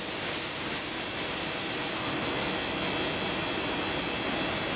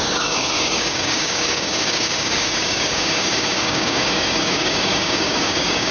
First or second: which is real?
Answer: first